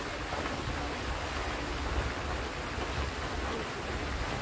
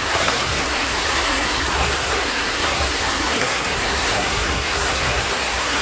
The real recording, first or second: first